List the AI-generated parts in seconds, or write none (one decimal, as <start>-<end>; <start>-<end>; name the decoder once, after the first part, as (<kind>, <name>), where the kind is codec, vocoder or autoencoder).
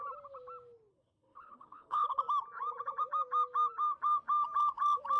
0.9-2.2 (codec, HILCodec)